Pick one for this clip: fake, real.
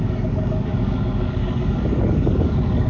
fake